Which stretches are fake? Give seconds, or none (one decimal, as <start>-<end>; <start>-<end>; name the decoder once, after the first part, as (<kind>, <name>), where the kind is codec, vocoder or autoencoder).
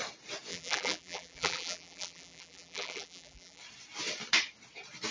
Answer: 0.5-3.6 (vocoder, BigVGAN v2)